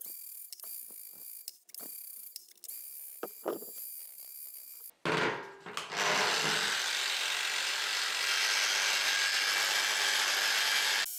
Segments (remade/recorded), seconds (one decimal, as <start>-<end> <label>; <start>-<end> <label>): 0.0-11.2 recorded